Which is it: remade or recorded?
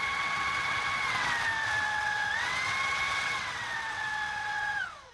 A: remade